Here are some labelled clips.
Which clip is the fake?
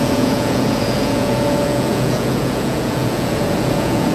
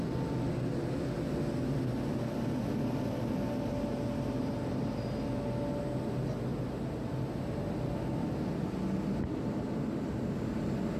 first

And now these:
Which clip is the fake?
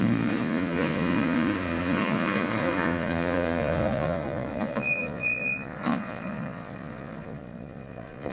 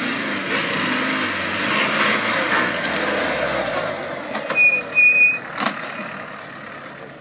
first